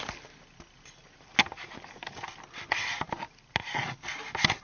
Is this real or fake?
real